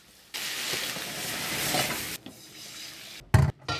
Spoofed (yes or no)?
no